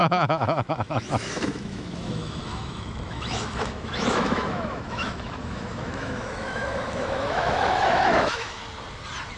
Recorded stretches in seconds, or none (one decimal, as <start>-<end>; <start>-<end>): 8.6-9.4